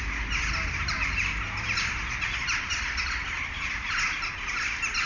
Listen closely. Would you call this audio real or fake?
real